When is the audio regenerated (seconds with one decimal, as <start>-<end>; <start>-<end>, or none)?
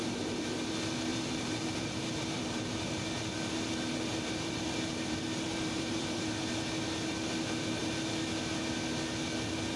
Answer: 1.1-3.2; 4.1-6.3